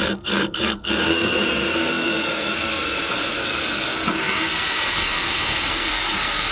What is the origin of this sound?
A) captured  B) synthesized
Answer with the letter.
B